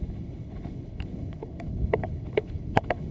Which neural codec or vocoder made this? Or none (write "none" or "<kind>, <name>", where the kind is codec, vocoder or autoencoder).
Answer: codec, HILCodec